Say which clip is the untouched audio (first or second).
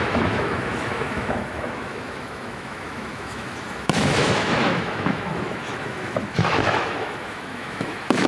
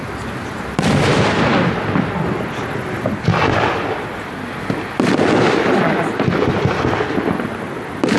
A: second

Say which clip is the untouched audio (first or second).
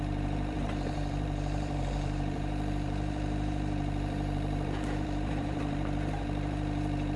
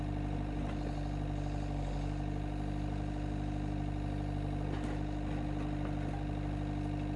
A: second